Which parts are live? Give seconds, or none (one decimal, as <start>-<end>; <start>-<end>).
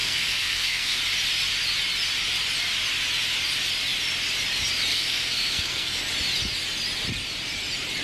1.0-4.9; 6.0-8.0